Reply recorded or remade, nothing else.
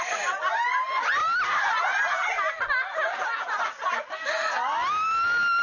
recorded